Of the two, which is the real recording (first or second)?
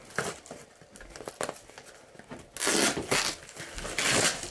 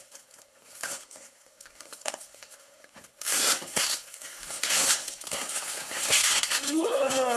first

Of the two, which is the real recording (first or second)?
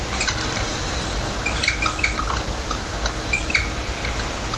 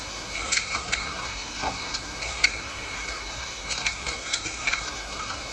first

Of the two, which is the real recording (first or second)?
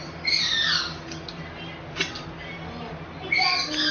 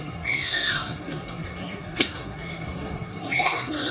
first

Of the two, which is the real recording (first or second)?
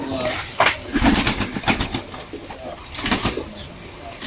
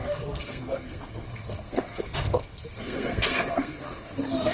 first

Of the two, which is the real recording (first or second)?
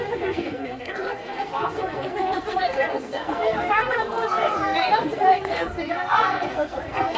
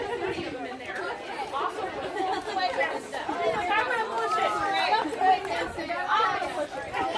second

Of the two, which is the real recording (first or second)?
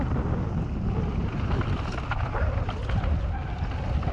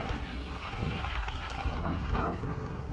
first